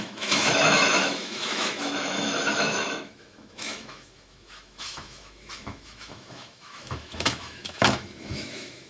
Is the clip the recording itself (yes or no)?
no